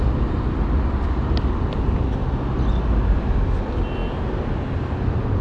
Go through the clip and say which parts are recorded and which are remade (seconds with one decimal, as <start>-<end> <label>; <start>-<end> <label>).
0.0-5.4 recorded